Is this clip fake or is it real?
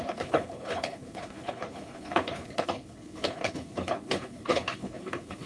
fake